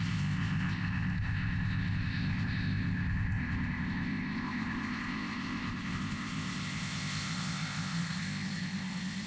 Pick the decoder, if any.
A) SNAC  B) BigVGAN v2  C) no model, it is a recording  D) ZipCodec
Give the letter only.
D